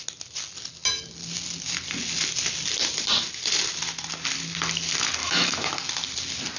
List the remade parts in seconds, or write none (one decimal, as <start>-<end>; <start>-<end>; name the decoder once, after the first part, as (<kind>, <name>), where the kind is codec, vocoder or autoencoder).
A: 5.2-5.7 (autoencoder, DAC-VAE)

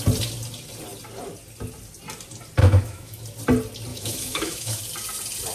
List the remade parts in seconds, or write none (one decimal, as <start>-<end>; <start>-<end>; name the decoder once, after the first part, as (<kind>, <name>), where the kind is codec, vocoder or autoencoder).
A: 2.6-3.2 (autoencoder, DAC-VAE); 3.9-4.8

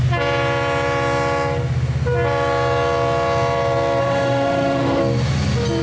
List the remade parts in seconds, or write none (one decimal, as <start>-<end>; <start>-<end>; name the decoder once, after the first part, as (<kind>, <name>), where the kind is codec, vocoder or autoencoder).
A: 4.0-5.0 (autoencoder, DAC-VAE)